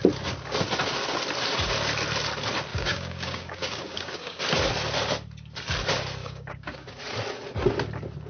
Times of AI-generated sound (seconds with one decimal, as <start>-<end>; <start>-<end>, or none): 2.7-4.4; 6.2-7.0